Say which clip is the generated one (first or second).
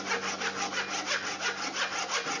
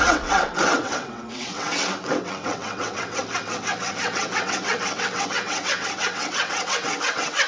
second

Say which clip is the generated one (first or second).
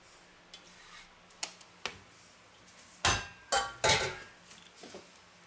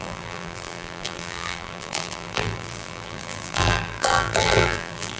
second